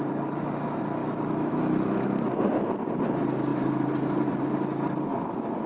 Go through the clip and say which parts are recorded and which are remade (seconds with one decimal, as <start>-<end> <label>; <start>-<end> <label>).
0.0-1.0 recorded; 1.0-2.3 remade; 2.3-5.7 recorded